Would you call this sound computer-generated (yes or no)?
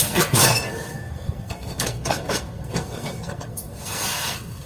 yes